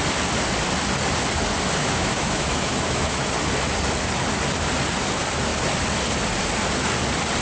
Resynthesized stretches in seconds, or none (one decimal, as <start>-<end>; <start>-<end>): 1.8-3.3